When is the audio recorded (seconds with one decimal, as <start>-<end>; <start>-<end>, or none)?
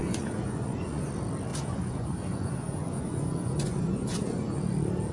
1.1-1.5; 4.6-5.1